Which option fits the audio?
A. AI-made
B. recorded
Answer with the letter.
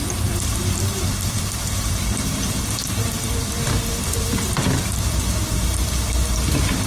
A